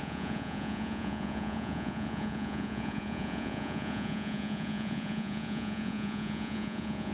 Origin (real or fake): fake